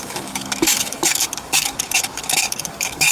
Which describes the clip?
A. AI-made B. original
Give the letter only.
A